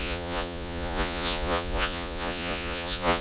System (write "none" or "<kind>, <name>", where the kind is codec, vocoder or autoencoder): vocoder, Vocos